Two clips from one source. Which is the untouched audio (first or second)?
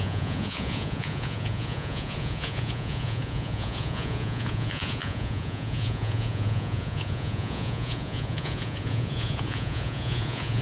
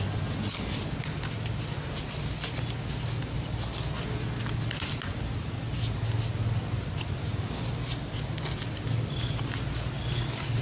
second